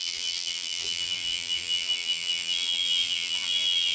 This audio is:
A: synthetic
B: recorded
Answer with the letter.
A